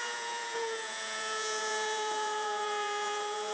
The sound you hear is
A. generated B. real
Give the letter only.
A